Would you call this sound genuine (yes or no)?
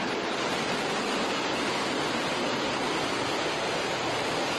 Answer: yes